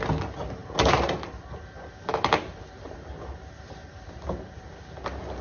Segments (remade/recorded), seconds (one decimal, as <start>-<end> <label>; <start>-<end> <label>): 0.0-5.4 recorded